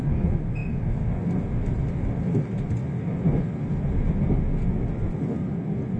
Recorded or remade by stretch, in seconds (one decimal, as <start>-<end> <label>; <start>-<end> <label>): 0.0-6.0 recorded